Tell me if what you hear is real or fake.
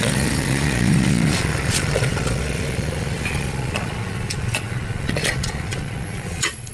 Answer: fake